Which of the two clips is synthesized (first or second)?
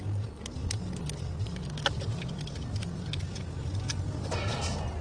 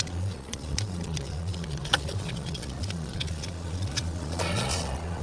second